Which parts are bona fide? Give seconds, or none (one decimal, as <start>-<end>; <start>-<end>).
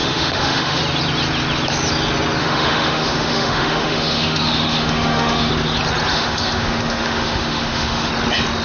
0.8-2.4; 5.5-6.1; 8.1-8.6